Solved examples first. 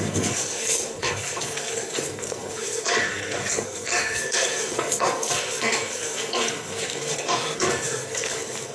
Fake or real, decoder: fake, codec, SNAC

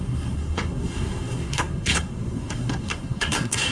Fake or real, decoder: fake, codec, SNAC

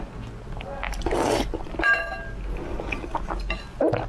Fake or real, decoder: real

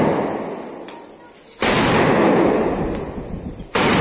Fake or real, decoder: real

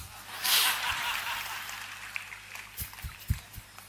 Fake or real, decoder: real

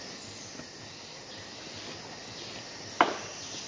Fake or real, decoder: real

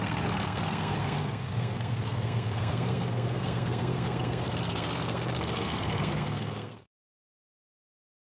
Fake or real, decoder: fake, codec, SNAC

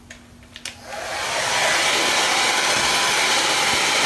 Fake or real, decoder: real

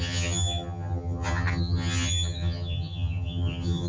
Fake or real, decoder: fake, vocoder, HiFi-GAN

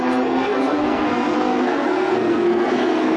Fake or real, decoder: fake, codec, SNAC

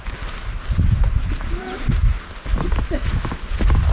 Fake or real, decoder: fake, vocoder, BigVGAN v2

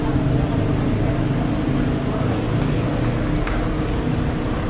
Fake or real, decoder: real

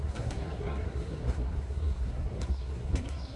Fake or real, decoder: fake, codec, SNAC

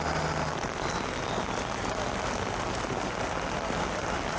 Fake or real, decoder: real